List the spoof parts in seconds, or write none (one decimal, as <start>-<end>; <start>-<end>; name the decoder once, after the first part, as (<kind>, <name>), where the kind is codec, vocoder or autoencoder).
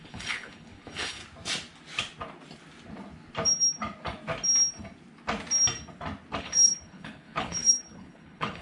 0.0-1.2 (codec, HILCodec); 6.4-8.6